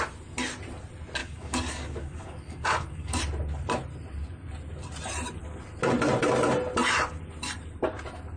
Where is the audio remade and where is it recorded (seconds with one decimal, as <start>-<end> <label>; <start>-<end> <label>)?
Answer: 0.0-1.2 recorded; 1.2-3.2 remade; 3.2-8.4 recorded